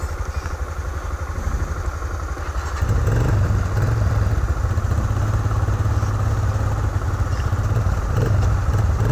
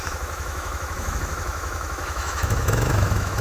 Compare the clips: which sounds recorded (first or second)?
first